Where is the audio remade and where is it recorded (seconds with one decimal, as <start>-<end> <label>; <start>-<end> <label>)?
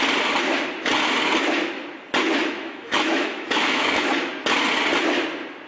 0.0-2.4 recorded; 2.4-4.1 remade; 4.1-5.7 recorded